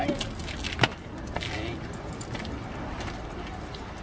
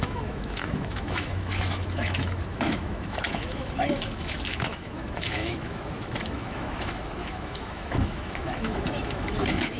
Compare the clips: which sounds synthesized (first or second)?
second